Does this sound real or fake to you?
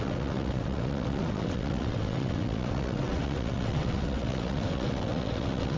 fake